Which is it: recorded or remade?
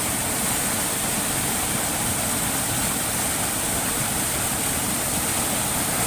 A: recorded